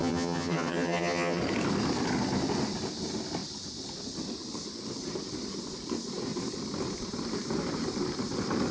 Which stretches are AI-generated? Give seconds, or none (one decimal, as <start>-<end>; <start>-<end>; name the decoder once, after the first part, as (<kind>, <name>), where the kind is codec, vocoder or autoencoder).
0.0-1.4 (vocoder, HiFi-GAN)